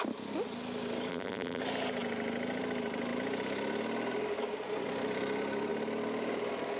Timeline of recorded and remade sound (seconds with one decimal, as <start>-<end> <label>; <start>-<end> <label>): 0.0-1.1 recorded; 1.1-1.6 remade; 1.6-6.8 recorded